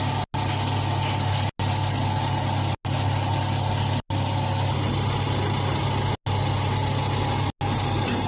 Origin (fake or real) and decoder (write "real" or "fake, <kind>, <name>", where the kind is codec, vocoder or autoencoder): real